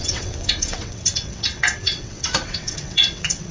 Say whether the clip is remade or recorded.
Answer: remade